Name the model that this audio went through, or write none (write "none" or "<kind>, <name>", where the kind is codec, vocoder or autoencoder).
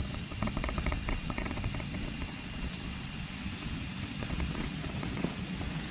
vocoder, WaveNeXt